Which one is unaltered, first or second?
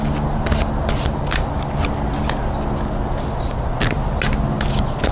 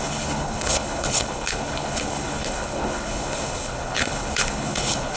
first